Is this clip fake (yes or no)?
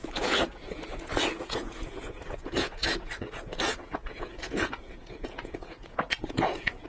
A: yes